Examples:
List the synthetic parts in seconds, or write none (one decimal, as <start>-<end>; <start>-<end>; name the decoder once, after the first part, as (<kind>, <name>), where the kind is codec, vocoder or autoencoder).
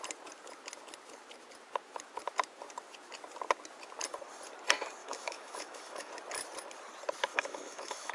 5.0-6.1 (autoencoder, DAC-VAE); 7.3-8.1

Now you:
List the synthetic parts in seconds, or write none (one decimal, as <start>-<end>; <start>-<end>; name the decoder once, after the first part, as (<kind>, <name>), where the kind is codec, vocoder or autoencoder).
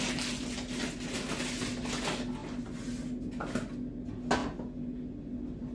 none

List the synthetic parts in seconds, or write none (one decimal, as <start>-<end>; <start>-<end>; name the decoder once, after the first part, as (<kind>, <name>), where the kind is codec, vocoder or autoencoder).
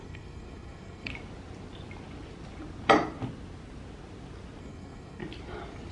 0.0-1.1 (codec, SNAC); 4.6-5.2